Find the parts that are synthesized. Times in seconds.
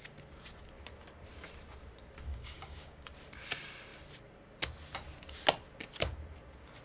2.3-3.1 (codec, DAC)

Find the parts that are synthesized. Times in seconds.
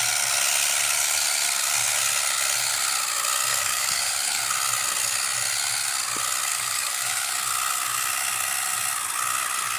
3.5-4.4 (codec, DAC); 6.5-7.3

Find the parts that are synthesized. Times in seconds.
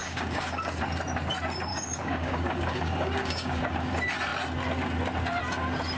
0.0-0.8 (codec, DAC); 1.7-3.6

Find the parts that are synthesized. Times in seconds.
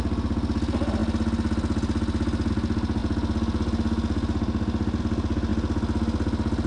none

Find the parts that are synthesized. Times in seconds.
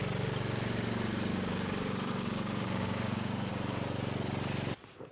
1.3-3.5 (codec, DAC)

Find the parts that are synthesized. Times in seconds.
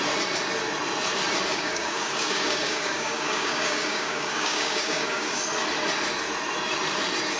1.5-5.4 (codec, DAC)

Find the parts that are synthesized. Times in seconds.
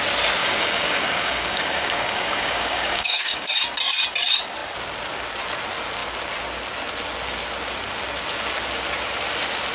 0.4-3.5 (codec, DAC)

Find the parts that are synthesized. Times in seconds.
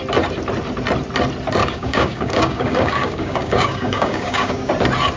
1.6-4.7 (codec, DAC)